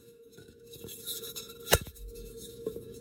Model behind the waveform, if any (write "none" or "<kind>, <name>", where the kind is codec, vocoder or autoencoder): autoencoder, DAC-VAE